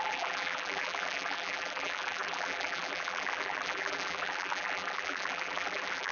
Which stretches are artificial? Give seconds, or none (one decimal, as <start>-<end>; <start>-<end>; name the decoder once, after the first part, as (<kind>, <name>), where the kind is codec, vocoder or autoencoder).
0.0-6.1 (vocoder, BigVGAN v2)